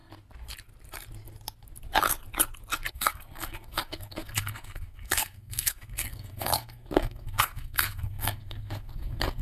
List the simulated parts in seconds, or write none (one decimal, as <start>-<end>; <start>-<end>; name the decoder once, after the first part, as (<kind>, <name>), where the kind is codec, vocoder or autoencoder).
2.9-9.4 (codec, SNAC)